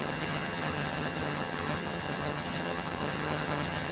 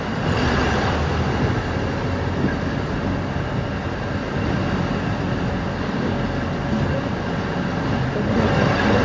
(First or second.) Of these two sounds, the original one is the second